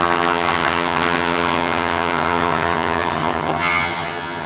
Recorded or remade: remade